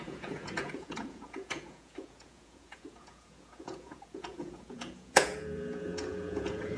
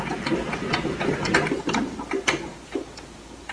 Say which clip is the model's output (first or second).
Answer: first